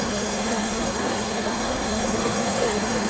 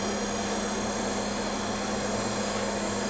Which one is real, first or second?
second